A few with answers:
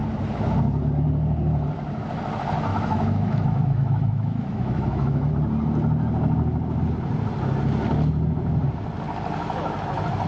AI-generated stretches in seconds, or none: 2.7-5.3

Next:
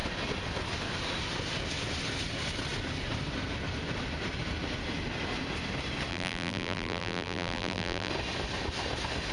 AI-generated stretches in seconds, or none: 6.1-8.1

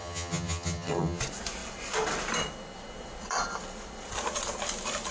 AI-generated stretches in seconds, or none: 0.0-1.2

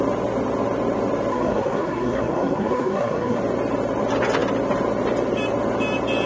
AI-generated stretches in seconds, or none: 1.3-3.4

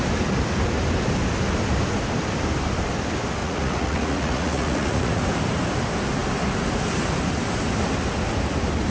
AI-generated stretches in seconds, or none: 3.4-5.2

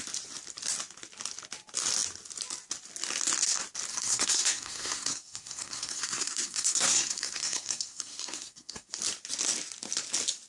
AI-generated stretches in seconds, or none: 3.9-8.9

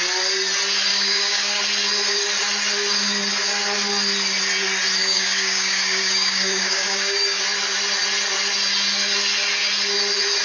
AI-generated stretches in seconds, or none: 0.9-1.6; 5.0-7.4